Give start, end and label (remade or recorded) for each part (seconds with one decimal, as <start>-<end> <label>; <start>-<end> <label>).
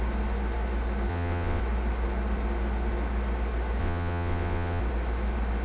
0.0-1.1 recorded; 1.1-1.6 remade; 1.6-3.8 recorded; 3.8-4.8 remade; 4.8-5.6 recorded